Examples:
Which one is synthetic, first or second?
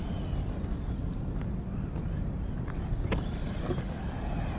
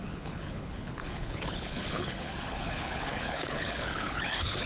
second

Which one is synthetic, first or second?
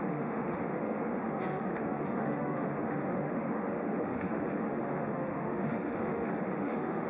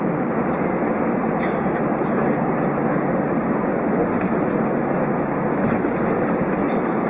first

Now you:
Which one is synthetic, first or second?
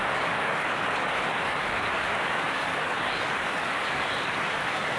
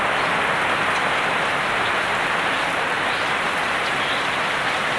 first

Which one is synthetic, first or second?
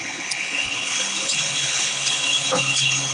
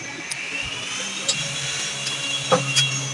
first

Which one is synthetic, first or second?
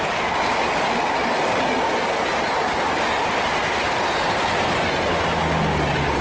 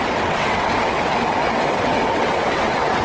second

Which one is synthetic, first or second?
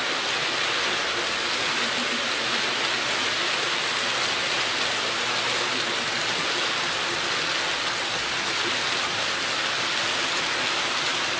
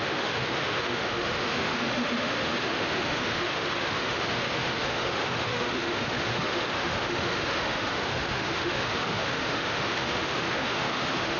second